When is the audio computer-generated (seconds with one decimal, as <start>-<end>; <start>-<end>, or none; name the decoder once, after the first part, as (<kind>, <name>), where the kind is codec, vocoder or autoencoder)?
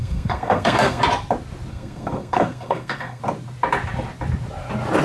0.0-1.0 (codec, SNAC); 1.7-3.2